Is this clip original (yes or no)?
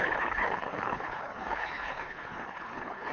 no